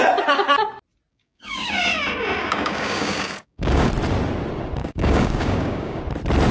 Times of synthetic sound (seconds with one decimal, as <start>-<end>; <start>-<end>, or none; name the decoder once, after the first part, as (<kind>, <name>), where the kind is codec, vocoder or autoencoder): 1.1-1.8 (codec, DAC); 2.4-3.9; 4.8-6.0